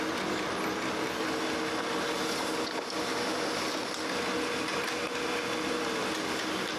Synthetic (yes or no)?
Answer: no